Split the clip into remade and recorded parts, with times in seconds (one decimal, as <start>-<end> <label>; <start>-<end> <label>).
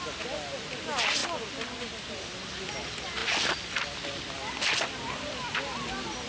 0.0-6.3 recorded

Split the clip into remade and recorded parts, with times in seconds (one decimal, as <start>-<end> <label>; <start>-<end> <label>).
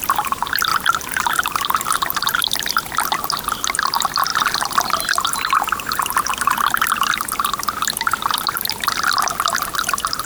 0.0-0.7 recorded; 0.7-1.6 remade; 1.6-10.3 recorded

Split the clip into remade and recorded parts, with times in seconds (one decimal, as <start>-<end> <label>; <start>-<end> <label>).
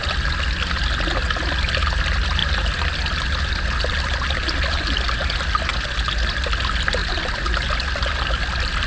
0.0-8.9 recorded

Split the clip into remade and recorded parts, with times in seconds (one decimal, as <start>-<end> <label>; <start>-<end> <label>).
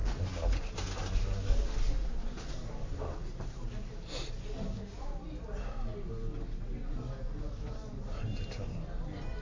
0.0-9.4 recorded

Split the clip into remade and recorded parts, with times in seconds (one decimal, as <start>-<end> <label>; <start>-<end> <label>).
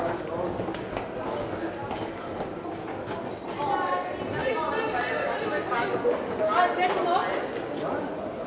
0.0-8.5 recorded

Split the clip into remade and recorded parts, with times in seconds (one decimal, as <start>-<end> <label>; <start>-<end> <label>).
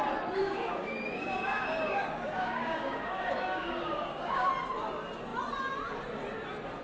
0.0-0.4 recorded; 0.4-4.5 remade; 4.5-6.8 recorded